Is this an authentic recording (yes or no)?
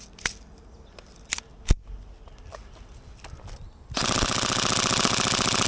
yes